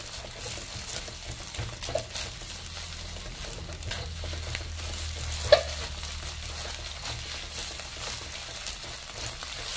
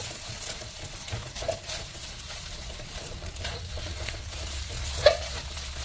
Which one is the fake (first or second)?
second